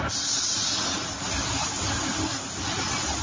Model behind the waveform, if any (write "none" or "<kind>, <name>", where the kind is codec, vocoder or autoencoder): none